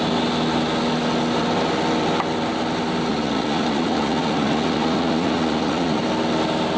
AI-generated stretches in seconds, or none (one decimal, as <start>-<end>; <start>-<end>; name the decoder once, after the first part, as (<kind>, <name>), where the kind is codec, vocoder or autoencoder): 3.1-6.0 (vocoder, Vocos)